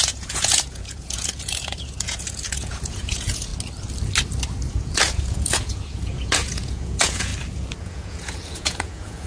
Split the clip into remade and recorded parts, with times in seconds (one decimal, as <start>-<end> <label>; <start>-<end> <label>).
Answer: 0.0-3.5 remade; 3.5-4.7 recorded; 4.7-7.3 remade; 7.3-7.8 recorded; 7.8-9.3 remade